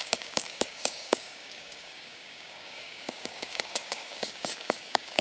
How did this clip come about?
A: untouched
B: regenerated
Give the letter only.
B